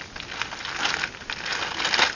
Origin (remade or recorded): recorded